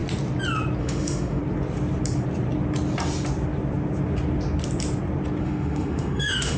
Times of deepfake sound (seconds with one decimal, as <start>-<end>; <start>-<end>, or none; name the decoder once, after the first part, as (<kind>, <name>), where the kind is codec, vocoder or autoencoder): 0.8-1.4 (autoencoder, DAC-VAE); 5.4-6.6